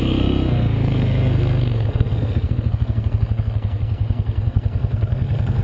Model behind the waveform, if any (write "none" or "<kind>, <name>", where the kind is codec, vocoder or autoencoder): codec, SNAC